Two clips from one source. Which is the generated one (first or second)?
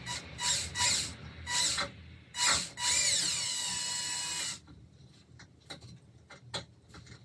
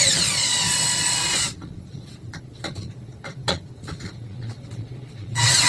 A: second